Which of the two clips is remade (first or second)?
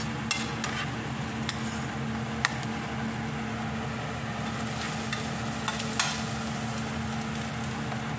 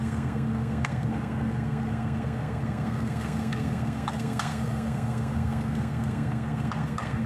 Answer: second